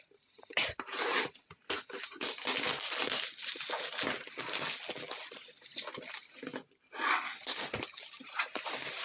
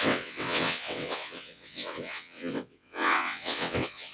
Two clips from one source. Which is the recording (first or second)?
first